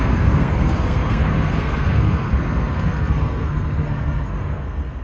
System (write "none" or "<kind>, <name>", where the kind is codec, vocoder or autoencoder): codec, SNAC